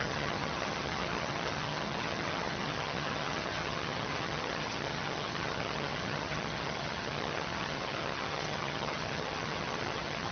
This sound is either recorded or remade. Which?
remade